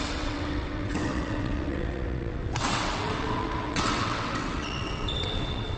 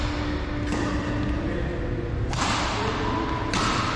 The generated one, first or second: first